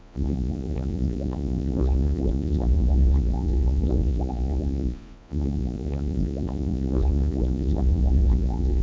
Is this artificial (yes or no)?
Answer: yes